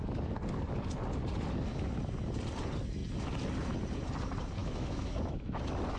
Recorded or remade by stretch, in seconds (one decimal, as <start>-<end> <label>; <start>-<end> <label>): 0.0-4.6 recorded; 4.6-5.6 remade; 5.6-6.0 recorded